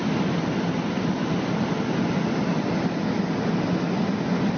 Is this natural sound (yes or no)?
yes